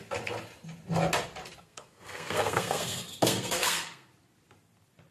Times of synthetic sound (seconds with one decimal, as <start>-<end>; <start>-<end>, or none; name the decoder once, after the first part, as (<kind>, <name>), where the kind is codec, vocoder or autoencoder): 1.6-4.1 (codec, SNAC)